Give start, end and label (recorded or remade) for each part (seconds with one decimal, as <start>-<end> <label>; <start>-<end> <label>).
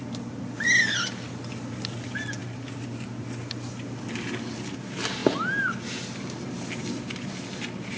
0.0-8.0 recorded